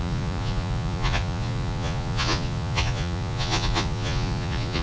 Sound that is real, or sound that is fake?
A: fake